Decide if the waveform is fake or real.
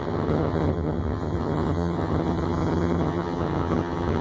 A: fake